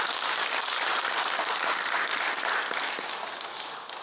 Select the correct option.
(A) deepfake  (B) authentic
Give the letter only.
B